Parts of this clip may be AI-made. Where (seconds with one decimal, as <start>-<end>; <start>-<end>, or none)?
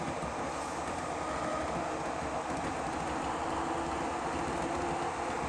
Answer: none